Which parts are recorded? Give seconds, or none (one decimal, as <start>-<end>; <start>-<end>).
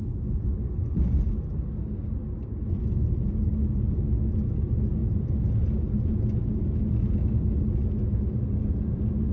0.0-9.3